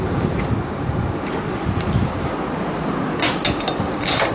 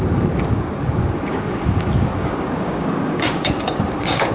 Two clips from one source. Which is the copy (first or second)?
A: second